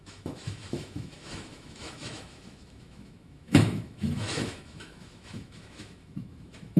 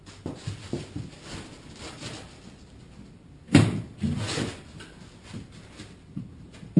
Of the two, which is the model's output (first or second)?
first